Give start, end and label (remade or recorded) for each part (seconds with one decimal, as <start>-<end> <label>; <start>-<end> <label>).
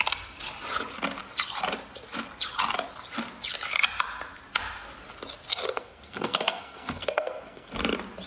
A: 0.0-5.5 recorded; 5.5-7.8 remade; 7.8-8.3 recorded